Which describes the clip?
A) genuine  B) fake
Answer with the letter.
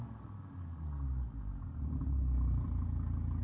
A